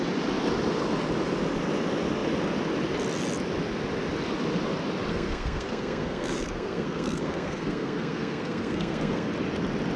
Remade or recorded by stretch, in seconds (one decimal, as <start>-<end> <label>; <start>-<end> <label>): 0.0-5.1 recorded; 5.1-9.3 remade; 9.3-10.0 recorded

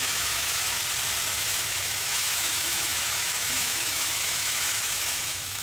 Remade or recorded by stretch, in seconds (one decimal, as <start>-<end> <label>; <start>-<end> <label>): 0.0-0.8 remade; 0.8-1.4 recorded; 1.4-5.6 remade

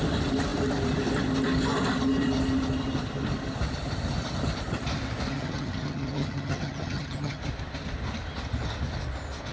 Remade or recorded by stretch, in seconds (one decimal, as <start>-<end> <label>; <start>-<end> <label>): 0.0-5.3 recorded; 5.3-7.4 remade; 7.4-9.5 recorded

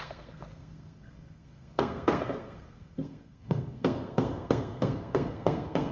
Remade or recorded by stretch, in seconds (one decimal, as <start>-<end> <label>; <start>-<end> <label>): 0.0-5.9 remade

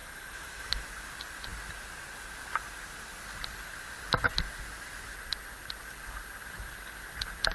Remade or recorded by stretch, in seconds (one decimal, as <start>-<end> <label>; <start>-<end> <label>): 0.0-0.8 remade; 0.8-7.5 recorded

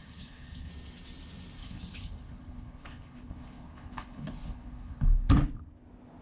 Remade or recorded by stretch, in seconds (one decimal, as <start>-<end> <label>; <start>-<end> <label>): 0.0-0.7 remade; 0.7-1.6 recorded; 1.6-5.3 remade; 5.3-6.2 recorded